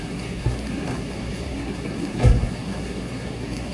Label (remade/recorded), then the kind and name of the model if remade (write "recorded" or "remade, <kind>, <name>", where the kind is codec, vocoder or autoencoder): remade, codec, SNAC